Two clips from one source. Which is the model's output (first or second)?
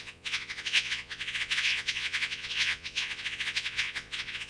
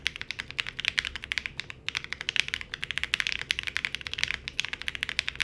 first